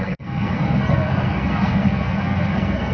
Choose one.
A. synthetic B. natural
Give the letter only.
A